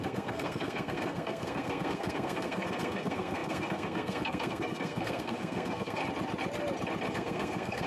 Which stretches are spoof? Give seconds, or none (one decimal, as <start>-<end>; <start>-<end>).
0.0-6.0; 7.1-7.9